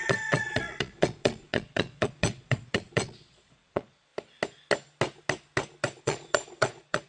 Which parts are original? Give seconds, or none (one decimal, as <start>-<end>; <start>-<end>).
4.1-6.0